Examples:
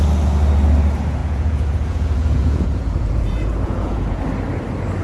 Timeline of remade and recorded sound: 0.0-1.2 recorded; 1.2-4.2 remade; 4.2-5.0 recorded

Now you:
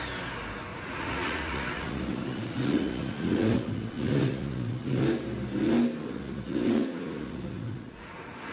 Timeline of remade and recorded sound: 0.0-0.7 recorded; 0.7-5.0 remade; 5.0-6.0 recorded; 6.0-8.5 remade

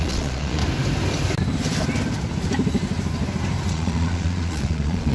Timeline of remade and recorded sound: 0.0-0.6 remade; 0.6-3.7 recorded; 3.7-5.1 remade

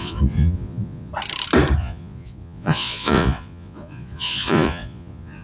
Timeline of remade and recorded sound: 0.0-1.1 remade; 1.1-1.8 recorded; 1.8-5.4 remade

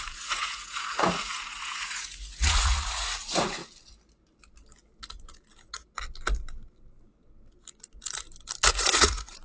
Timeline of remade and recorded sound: 0.0-3.6 remade; 3.6-8.7 recorded; 8.7-9.4 remade

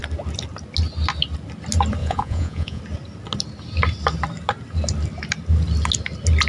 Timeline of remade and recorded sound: 0.0-2.0 recorded; 2.0-2.8 remade; 2.8-6.5 recorded

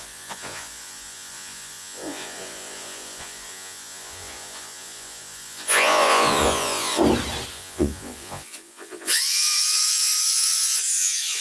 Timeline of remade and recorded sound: 0.0-7.0 remade; 7.0-7.5 recorded; 7.5-11.4 remade

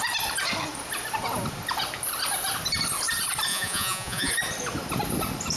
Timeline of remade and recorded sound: 0.0-3.5 recorded; 3.5-4.3 remade; 4.3-5.6 recorded